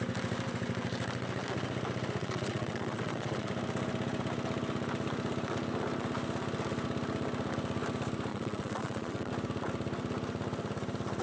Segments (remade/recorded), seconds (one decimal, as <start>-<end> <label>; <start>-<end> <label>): 0.0-2.2 recorded; 2.2-3.5 remade; 3.5-8.3 recorded; 8.3-9.3 remade; 9.3-11.2 recorded